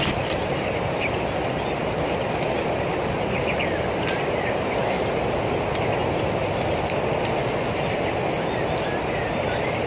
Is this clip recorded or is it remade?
recorded